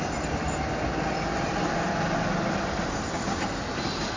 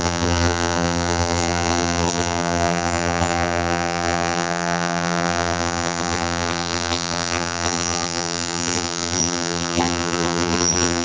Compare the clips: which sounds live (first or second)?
first